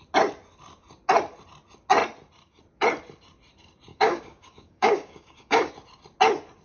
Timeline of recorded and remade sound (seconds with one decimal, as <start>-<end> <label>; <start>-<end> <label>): 0.0-3.9 recorded; 3.9-5.7 remade; 5.7-6.6 recorded